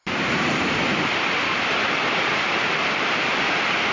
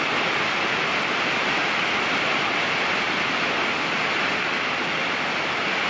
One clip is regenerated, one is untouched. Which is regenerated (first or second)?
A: first